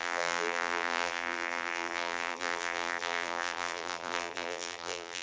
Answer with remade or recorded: remade